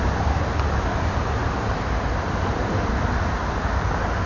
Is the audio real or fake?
fake